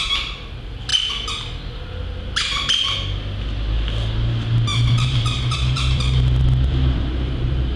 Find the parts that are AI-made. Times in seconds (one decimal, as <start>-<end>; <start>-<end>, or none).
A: 4.7-7.8